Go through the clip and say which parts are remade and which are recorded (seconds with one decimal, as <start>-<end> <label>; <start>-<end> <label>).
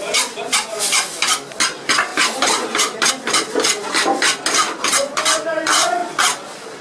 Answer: 0.0-6.8 recorded